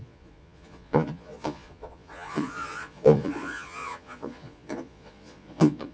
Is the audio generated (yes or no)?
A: yes